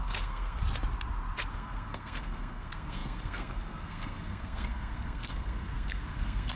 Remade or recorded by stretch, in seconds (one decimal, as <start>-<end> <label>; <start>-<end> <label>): 0.0-0.6 remade; 0.6-1.5 recorded; 1.5-6.6 remade